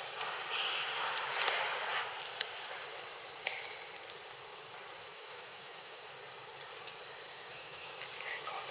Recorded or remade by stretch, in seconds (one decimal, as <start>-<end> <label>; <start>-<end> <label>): 0.0-5.0 recorded; 5.0-6.1 remade; 6.1-7.3 recorded; 7.3-7.9 remade; 7.9-8.7 recorded